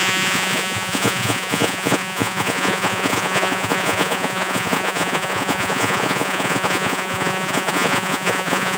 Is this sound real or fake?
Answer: fake